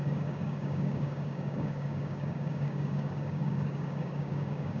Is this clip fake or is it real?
fake